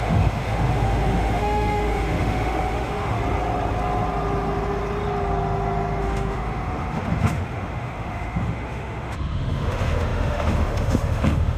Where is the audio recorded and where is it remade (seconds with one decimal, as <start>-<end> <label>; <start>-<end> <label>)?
0.0-3.2 remade; 3.2-6.0 recorded; 6.0-11.6 remade